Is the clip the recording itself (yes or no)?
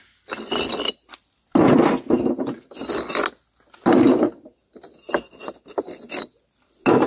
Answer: yes